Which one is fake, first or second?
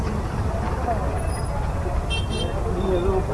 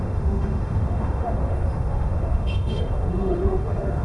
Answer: second